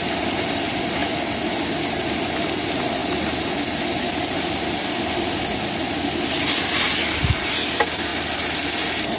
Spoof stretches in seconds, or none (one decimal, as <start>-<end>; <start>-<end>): none